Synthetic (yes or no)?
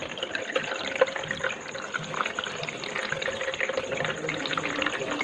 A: no